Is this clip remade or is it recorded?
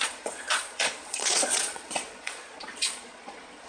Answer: remade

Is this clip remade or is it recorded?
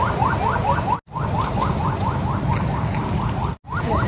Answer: recorded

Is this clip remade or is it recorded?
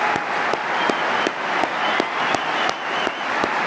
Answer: recorded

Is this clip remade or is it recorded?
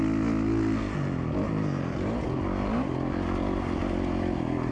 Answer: recorded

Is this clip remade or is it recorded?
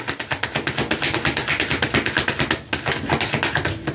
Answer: recorded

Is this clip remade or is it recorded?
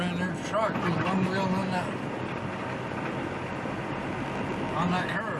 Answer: recorded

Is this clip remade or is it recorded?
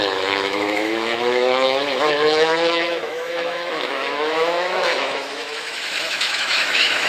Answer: remade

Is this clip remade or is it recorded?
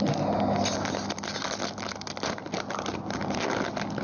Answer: recorded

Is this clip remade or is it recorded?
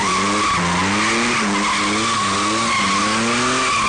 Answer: recorded